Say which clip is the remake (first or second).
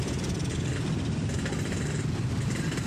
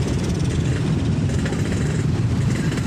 second